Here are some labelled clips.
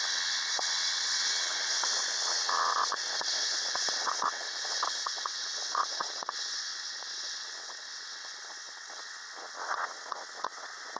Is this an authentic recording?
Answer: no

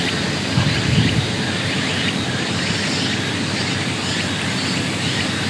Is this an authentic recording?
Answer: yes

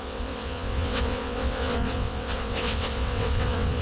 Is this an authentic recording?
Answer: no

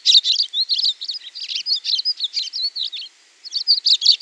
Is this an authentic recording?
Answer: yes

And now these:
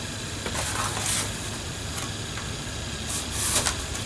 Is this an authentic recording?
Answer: yes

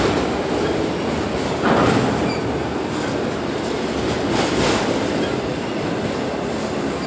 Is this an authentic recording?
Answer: yes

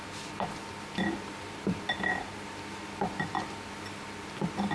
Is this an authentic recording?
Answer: yes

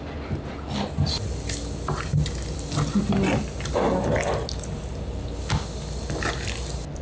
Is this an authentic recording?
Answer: yes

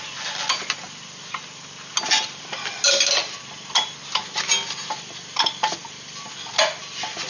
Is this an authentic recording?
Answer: yes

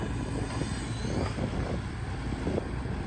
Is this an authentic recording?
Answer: yes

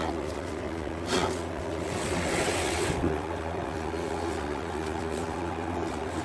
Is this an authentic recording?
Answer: no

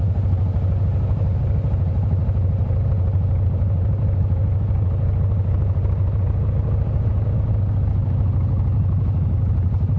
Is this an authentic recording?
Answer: yes